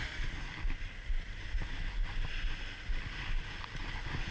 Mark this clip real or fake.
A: real